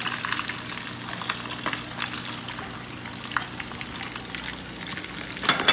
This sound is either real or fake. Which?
real